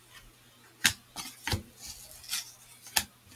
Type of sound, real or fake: real